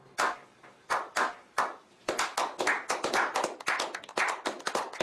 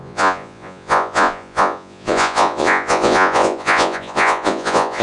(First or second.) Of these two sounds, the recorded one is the first